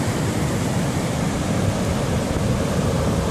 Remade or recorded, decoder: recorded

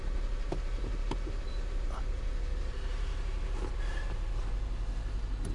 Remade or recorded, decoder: remade, vocoder, BigVGAN v2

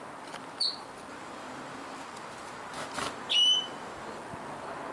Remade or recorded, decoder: recorded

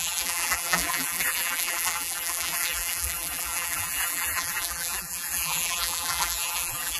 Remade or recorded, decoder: remade, vocoder, BigVGAN v2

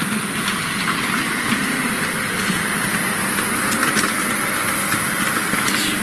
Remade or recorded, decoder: remade, vocoder, BigVGAN v2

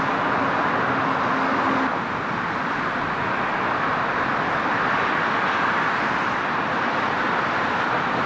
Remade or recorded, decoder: recorded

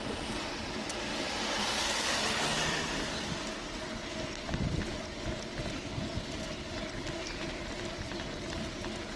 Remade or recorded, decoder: remade, vocoder, BigVGAN v2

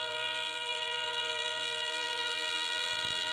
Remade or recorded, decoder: remade, vocoder, BigVGAN v2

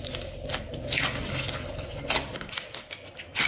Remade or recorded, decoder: recorded